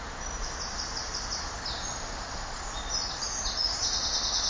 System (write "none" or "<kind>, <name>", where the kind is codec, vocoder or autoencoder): none